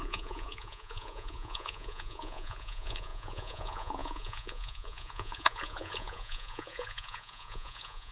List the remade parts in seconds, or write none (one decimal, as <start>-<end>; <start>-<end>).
0.0-8.1